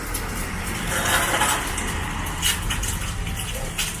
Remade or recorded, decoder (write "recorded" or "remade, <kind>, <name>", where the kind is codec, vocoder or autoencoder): recorded